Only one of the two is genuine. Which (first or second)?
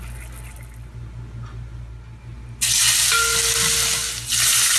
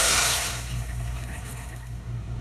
first